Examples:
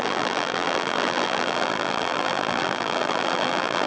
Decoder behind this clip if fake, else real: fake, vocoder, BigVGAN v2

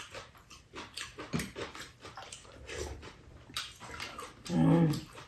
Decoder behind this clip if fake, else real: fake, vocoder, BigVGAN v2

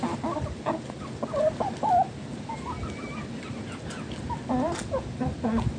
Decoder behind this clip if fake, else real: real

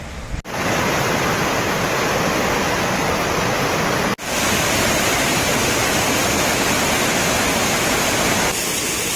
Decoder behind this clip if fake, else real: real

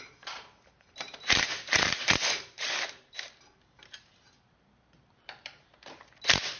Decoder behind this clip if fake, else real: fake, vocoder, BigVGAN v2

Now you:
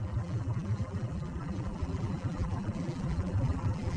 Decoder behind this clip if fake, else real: fake, vocoder, BigVGAN v2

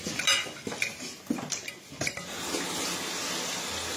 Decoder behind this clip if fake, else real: real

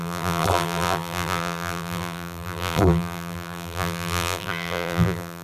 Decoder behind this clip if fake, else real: fake, vocoder, BigVGAN v2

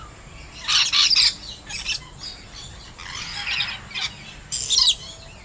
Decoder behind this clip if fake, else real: real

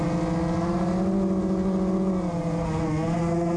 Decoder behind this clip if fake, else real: real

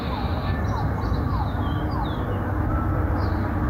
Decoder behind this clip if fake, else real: real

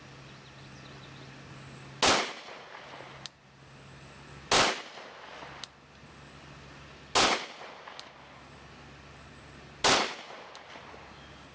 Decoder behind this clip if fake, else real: real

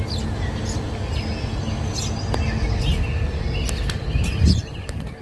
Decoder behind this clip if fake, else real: real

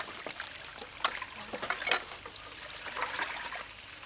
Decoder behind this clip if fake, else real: real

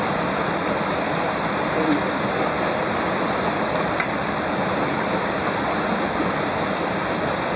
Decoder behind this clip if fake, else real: fake, vocoder, BigVGAN v2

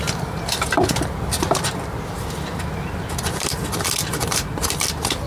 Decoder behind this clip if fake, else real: fake, vocoder, BigVGAN v2